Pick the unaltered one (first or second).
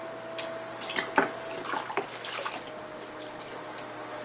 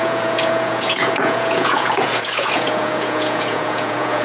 first